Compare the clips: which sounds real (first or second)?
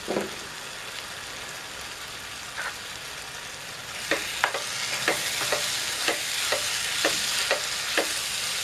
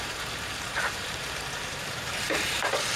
first